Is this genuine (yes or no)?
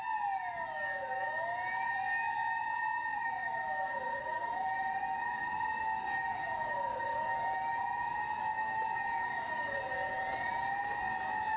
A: yes